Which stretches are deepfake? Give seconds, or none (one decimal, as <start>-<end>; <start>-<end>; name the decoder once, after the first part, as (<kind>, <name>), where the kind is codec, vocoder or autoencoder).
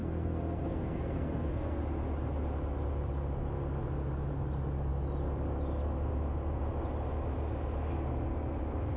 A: 0.0-1.8 (codec, SNAC)